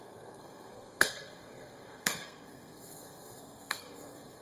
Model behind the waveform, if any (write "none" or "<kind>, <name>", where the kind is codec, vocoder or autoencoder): codec, SNAC